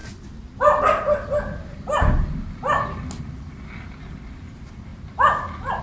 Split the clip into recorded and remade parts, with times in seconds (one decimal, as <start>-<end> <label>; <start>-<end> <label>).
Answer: 0.0-5.8 recorded

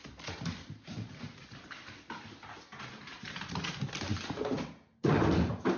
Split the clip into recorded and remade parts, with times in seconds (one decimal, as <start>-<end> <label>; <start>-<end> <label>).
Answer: 0.0-5.8 recorded

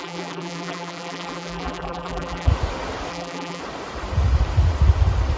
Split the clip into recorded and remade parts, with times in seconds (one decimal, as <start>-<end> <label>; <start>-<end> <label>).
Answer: 0.0-2.5 remade; 2.5-3.1 recorded; 3.1-3.6 remade; 3.6-5.4 recorded

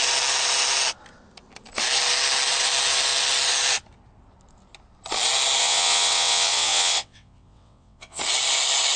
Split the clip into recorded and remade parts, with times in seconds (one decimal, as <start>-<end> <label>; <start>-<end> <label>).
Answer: 0.0-5.6 recorded; 5.6-8.2 remade; 8.2-9.0 recorded